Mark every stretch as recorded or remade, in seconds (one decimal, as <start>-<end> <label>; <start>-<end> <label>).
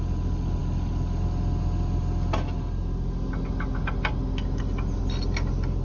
0.0-5.8 recorded